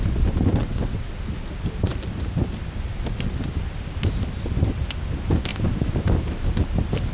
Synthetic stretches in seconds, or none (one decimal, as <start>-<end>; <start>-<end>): 0.6-1.1